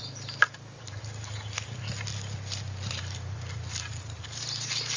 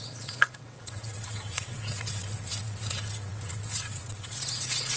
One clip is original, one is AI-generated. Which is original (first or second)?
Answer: first